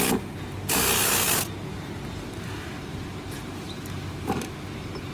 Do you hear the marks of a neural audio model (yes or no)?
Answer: no